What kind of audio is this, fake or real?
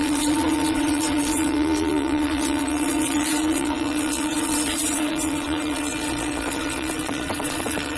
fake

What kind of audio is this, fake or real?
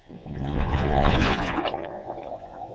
fake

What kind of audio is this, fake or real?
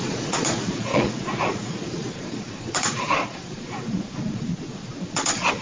fake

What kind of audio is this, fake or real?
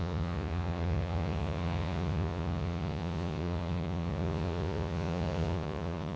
fake